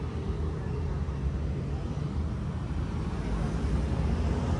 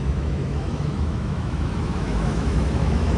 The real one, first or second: first